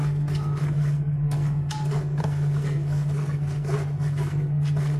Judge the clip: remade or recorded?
remade